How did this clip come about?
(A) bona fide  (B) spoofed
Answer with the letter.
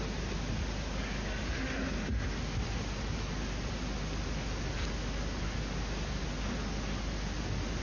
A